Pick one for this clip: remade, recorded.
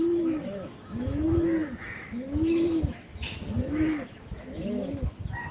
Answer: remade